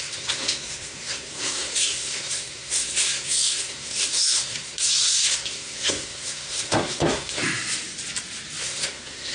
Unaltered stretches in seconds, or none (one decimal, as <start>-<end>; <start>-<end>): 7.4-8.6